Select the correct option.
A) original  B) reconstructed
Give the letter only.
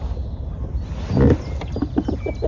A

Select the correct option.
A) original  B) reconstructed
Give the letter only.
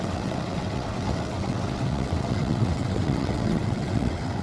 B